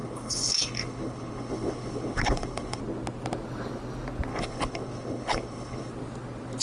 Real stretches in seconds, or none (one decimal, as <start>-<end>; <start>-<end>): 2.8-4.3; 5.9-6.6